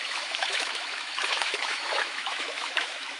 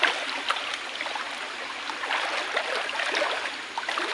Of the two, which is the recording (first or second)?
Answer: second